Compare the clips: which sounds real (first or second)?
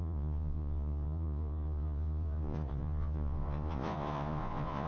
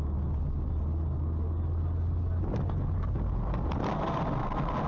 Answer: second